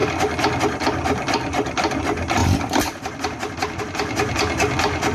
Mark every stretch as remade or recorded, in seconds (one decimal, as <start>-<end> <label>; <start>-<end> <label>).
0.0-5.1 recorded

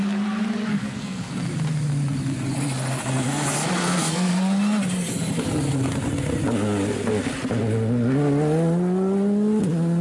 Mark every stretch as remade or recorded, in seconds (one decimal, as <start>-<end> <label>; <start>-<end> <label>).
0.0-0.7 recorded; 0.7-1.4 remade; 1.4-3.8 recorded; 3.8-4.3 remade; 4.3-10.0 recorded

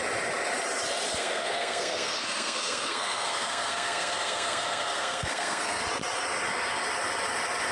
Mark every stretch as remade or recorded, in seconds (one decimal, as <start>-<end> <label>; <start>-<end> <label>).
0.0-1.2 recorded; 1.2-5.8 remade; 5.8-7.7 recorded

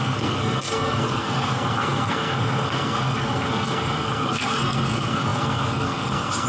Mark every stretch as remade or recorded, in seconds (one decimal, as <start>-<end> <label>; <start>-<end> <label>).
0.0-6.5 remade

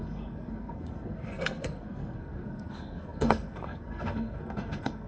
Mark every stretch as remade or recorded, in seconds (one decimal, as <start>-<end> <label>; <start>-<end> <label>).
0.0-5.1 remade

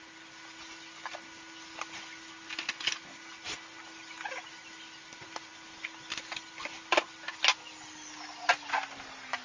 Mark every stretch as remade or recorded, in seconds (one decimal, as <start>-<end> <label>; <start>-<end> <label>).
0.0-9.4 recorded